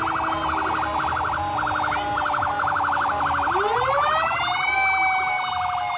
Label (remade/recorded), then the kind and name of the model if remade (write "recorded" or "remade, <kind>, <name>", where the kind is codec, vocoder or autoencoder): recorded